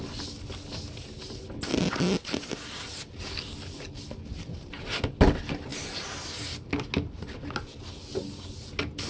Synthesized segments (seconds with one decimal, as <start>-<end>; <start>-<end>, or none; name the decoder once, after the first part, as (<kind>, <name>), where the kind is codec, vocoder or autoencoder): none